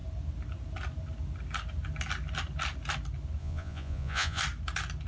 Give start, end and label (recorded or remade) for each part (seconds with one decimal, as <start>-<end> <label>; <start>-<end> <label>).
0.0-3.4 recorded; 3.4-4.4 remade; 4.4-5.1 recorded